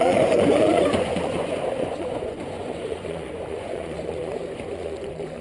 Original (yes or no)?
no